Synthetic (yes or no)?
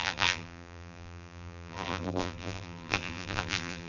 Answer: yes